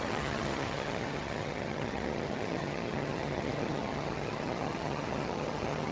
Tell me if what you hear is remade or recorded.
remade